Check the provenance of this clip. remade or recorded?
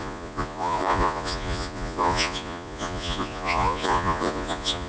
remade